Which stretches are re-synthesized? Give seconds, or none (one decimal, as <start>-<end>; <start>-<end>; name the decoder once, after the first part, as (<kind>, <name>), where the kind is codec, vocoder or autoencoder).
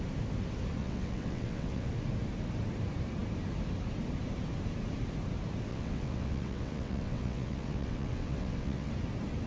0.8-1.9 (vocoder, WaveNeXt); 5.7-8.9